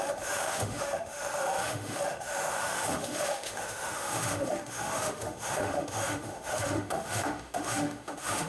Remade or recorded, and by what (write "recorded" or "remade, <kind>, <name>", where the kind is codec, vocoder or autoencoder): remade, autoencoder, DAC-VAE